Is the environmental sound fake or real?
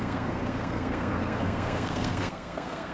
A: fake